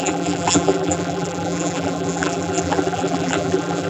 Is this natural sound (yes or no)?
no